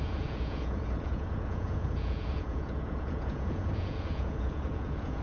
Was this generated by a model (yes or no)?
yes